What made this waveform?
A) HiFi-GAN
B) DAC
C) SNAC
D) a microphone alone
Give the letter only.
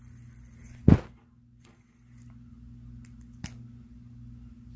D